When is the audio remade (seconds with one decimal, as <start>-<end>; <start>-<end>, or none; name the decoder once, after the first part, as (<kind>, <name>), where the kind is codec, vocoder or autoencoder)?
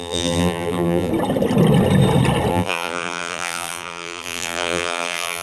0.0-1.1 (vocoder, BigVGAN v2); 2.5-5.4